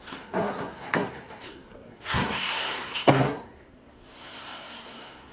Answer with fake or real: fake